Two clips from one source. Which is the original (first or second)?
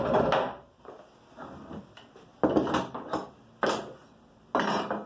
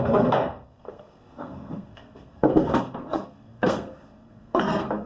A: first